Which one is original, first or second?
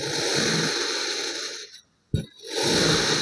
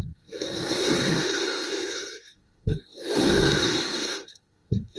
first